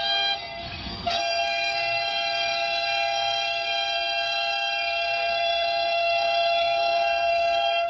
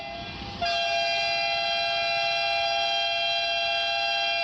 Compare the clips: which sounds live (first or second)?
second